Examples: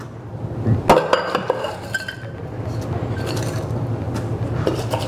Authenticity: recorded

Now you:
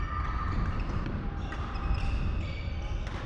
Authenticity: recorded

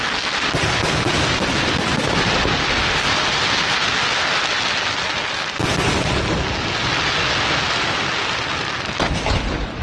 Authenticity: recorded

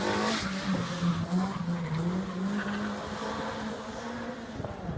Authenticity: recorded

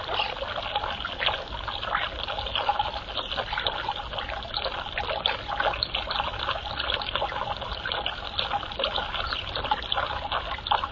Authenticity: recorded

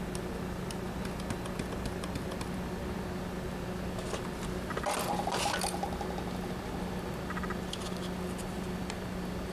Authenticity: recorded